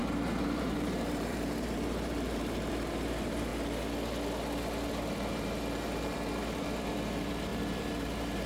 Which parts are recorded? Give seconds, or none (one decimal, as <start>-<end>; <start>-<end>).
3.5-4.9